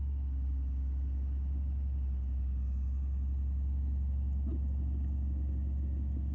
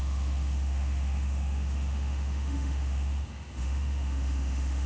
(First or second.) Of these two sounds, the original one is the first